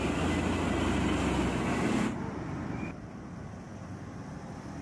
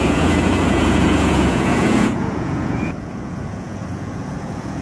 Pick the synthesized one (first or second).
second